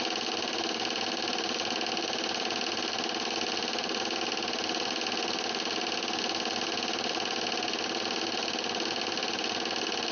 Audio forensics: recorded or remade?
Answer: recorded